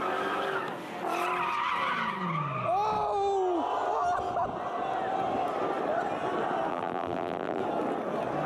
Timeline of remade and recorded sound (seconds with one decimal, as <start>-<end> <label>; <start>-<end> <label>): 0.0-6.7 recorded; 6.7-7.6 remade; 7.6-8.5 recorded